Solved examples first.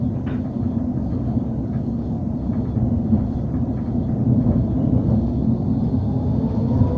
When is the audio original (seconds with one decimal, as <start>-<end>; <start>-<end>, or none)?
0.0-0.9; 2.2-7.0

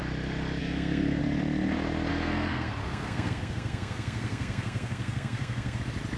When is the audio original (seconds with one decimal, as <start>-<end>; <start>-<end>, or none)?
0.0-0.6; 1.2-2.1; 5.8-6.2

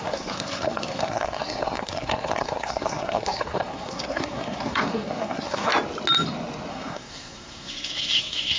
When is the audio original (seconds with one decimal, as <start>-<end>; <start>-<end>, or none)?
5.7-6.7